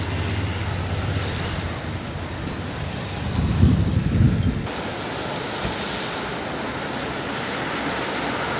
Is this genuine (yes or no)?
yes